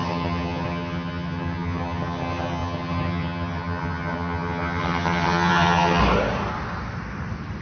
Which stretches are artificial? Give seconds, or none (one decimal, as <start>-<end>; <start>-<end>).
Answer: 0.0-6.0